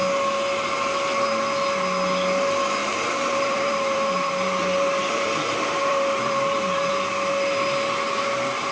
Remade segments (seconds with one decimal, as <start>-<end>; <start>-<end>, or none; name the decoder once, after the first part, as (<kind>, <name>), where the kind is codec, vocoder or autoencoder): 2.8-6.9 (vocoder, BigVGAN v2)